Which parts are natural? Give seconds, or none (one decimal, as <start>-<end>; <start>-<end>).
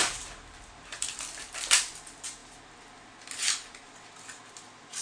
1.9-5.0